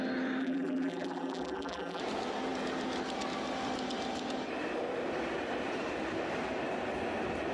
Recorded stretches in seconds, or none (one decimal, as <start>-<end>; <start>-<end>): 0.0-0.4; 2.0-7.5